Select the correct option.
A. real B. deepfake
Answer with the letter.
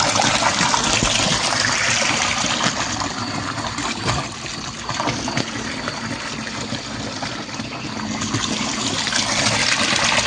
A